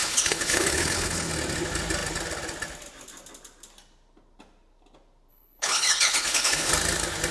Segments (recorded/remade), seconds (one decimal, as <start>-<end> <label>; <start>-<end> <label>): 0.0-1.3 remade; 1.3-5.3 recorded; 5.3-6.7 remade; 6.7-7.3 recorded

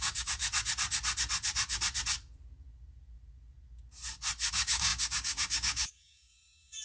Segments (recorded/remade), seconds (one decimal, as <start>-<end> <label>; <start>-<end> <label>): 0.0-0.4 remade; 0.4-4.5 recorded; 4.5-6.8 remade

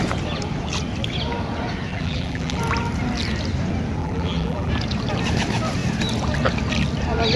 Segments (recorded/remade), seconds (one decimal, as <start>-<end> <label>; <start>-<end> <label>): 0.0-1.9 recorded; 1.9-2.6 remade; 2.6-4.0 recorded; 4.0-4.7 remade; 4.7-7.4 recorded

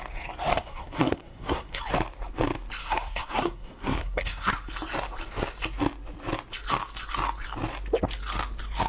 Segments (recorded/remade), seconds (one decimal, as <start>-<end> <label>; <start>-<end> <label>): 0.0-0.5 recorded; 0.5-1.8 remade; 1.8-2.8 recorded; 2.8-4.5 remade; 4.5-8.9 recorded

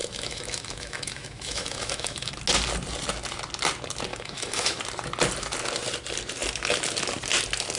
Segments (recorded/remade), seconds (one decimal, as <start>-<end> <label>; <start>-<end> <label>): 0.0-2.3 remade; 2.3-4.1 recorded; 4.1-4.8 remade; 4.8-7.8 recorded

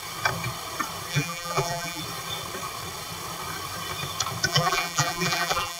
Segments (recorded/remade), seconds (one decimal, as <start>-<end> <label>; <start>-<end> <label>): 0.0-1.1 recorded; 1.1-2.0 remade; 2.0-4.5 recorded; 4.5-5.8 remade

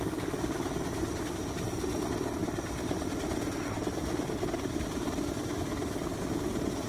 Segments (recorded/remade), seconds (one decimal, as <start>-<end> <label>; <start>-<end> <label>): 0.0-6.9 recorded